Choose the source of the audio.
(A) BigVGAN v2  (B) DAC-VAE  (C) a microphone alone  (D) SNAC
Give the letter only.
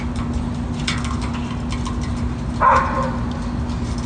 C